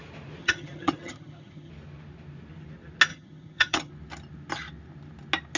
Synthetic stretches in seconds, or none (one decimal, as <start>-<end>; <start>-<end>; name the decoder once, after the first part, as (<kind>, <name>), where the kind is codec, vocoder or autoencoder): 0.4-1.7 (vocoder, HiFi-GAN); 3.1-3.9